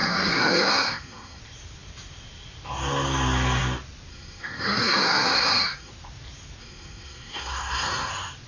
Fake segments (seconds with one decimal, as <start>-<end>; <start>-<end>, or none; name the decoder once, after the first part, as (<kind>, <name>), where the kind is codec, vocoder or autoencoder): 0.0-1.4 (codec, SNAC); 4.1-5.9; 6.6-8.1

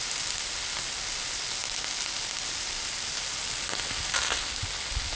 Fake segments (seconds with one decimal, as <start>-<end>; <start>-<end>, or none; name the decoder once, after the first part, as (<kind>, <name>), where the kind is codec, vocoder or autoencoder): none

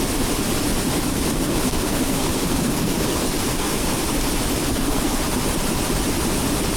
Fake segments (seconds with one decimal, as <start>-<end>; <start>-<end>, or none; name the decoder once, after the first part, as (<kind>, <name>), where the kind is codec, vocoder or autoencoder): 1.1-4.0 (codec, SNAC); 4.6-5.2

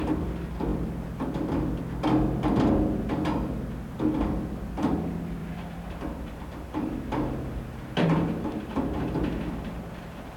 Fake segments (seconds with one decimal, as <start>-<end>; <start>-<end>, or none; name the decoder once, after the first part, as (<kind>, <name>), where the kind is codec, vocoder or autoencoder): 5.4-10.0 (vocoder, BigVGAN v2)

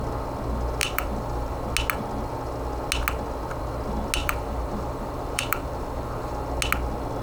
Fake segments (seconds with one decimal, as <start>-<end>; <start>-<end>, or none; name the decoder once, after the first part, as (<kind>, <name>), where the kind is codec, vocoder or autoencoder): 0.8-1.6 (vocoder, BigVGAN v2); 4.2-6.5